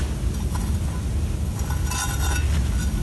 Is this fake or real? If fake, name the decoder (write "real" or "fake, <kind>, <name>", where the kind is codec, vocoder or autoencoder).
real